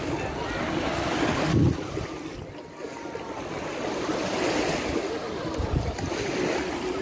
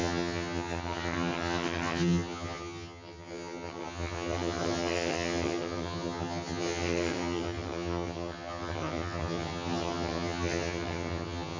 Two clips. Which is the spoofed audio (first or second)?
second